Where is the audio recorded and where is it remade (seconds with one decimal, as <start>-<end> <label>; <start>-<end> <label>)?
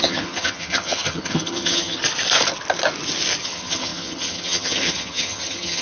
0.0-2.0 remade; 2.0-3.4 recorded; 3.4-5.8 remade